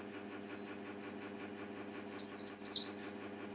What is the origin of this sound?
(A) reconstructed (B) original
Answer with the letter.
B